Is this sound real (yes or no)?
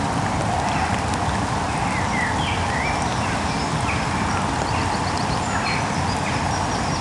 yes